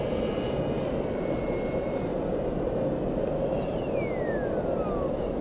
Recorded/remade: recorded